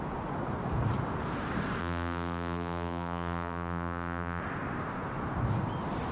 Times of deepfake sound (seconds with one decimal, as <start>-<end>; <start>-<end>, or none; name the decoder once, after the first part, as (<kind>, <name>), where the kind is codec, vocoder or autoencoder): 1.8-4.4 (vocoder, BigVGAN v2)